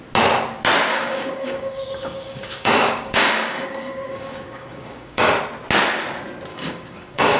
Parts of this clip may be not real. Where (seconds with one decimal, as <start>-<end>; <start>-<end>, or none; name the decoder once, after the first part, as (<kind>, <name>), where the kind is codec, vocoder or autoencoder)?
0.9-5.3 (codec, DAC); 6.5-7.4